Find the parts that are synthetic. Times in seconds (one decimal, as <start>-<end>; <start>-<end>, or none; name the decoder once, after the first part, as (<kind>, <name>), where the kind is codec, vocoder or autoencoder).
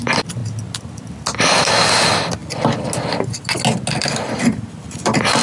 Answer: none